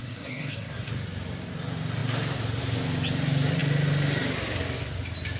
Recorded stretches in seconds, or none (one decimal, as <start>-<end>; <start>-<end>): 0.9-5.4